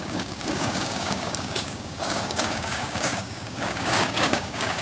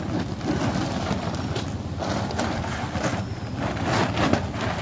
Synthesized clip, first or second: first